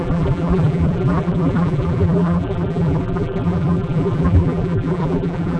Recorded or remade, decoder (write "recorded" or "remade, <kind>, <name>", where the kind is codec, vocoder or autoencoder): remade, vocoder, BigVGAN v2